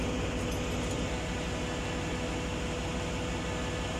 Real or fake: real